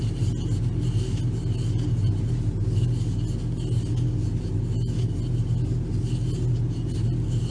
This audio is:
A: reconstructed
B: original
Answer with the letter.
B